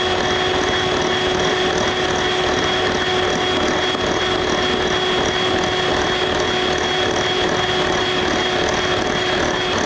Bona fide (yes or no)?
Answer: yes